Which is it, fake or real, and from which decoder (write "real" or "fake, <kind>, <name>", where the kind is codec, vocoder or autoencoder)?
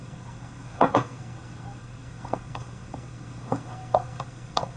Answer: fake, codec, SNAC